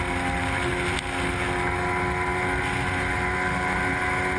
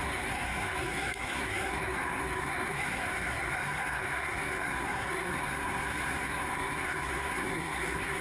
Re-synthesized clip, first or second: second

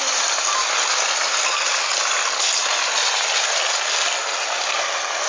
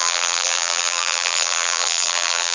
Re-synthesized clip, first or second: second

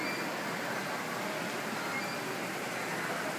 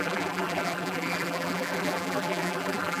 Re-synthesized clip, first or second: second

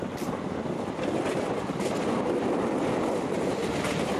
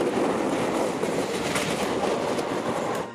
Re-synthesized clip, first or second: first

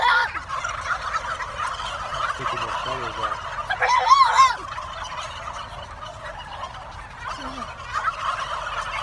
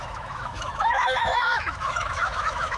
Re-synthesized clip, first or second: second